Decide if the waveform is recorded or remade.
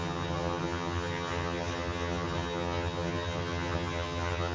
remade